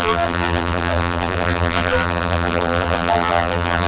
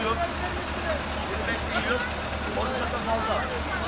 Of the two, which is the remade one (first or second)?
first